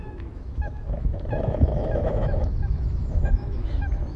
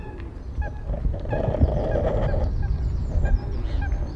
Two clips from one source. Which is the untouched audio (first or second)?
second